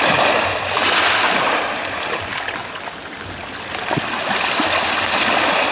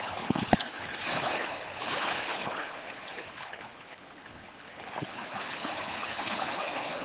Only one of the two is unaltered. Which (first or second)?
first